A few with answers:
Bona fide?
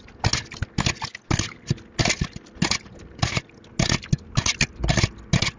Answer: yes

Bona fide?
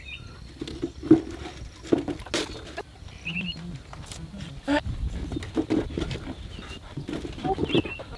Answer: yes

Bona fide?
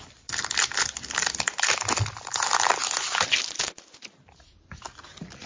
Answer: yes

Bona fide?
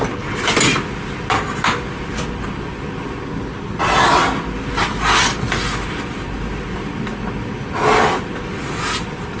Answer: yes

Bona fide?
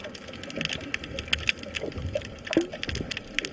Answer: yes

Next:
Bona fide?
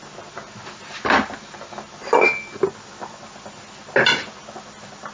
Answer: yes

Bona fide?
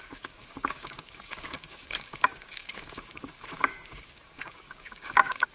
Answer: no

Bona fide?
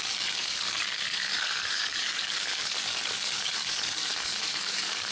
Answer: no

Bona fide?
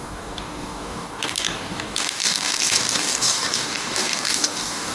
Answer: no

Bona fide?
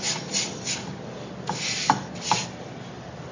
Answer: yes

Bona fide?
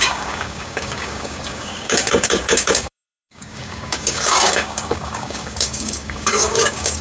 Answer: no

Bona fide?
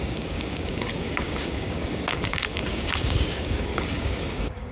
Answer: no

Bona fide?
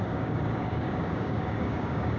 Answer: no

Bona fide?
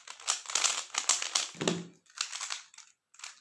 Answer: yes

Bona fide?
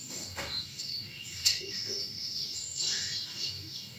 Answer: no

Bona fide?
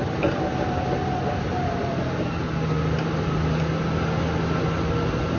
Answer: yes